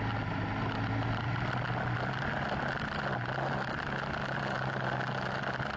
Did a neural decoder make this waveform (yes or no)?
no